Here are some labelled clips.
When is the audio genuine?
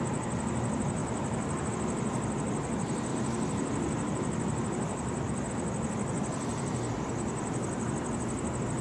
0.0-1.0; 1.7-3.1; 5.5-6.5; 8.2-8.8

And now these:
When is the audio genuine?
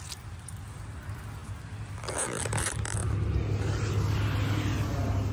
0.0-5.3